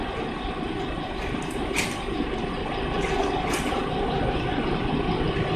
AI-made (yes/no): no